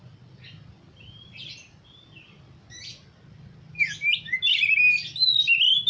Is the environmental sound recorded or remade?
recorded